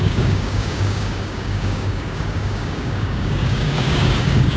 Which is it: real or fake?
fake